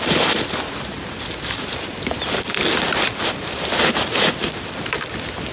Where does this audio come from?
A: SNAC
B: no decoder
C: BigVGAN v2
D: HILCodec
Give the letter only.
B